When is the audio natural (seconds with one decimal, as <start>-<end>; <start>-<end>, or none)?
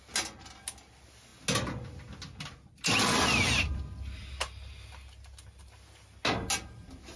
0.0-7.2